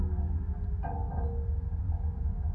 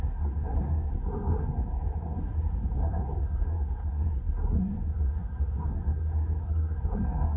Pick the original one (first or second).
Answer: first